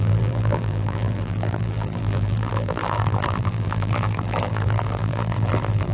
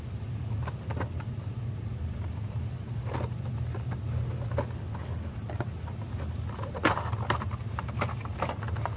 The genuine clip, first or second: second